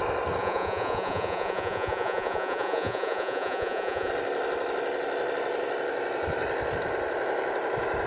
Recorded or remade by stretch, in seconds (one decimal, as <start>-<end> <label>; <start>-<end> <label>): 0.0-0.4 recorded; 0.4-4.1 remade; 4.1-8.1 recorded